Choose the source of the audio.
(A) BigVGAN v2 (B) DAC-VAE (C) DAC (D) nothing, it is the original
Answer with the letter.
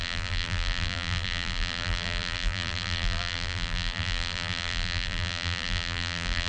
A